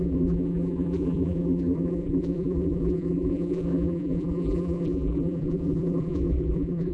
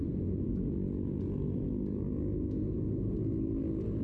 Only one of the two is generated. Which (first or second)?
first